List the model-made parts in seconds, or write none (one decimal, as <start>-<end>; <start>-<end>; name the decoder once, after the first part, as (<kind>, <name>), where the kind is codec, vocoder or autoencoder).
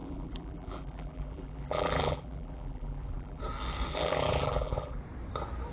0.0-3.4 (vocoder, BigVGAN v2); 3.9-5.0